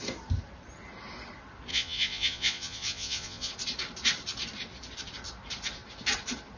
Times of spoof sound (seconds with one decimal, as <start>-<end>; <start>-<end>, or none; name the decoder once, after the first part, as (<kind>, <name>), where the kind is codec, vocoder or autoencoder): 1.7-3.5 (vocoder, Vocos)